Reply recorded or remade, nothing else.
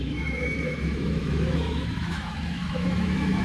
remade